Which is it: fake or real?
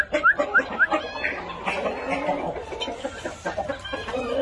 real